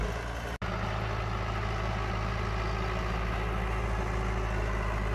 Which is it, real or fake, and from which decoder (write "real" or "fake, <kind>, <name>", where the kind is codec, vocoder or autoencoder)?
real